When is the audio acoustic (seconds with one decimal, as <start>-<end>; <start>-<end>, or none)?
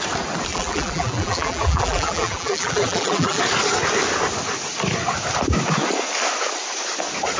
0.0-0.5; 3.4-7.4